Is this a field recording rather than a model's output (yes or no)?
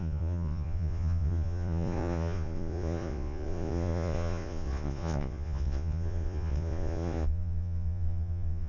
no